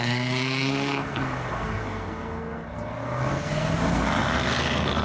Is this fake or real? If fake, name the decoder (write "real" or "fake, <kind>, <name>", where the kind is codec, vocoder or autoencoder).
fake, codec, SNAC